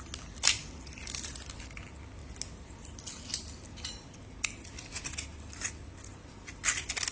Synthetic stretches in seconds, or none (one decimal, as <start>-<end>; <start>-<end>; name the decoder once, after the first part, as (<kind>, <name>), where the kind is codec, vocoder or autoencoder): none